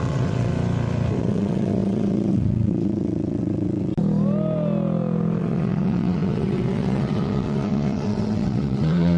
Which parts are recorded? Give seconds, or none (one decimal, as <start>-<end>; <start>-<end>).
0.5-1.2; 3.9-5.4